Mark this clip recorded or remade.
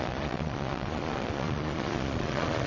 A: remade